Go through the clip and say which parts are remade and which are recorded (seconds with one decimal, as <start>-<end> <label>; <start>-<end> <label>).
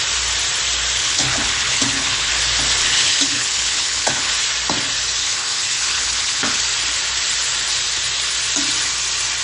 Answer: 0.0-1.0 recorded; 1.0-2.3 remade; 2.3-2.8 recorded; 2.8-4.3 remade; 4.3-5.2 recorded; 5.2-6.6 remade; 6.6-9.4 recorded